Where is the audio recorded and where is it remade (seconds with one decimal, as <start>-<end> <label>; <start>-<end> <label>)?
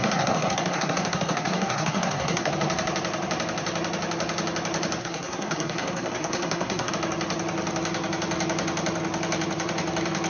0.0-2.5 remade; 2.5-5.0 recorded; 5.0-6.9 remade; 6.9-10.3 recorded